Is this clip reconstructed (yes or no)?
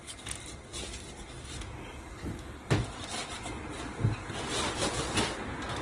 no